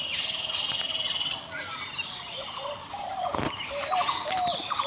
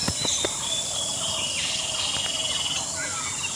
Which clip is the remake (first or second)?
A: first